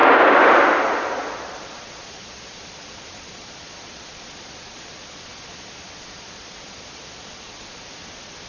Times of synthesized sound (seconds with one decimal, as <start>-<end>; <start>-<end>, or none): 0.8-8.5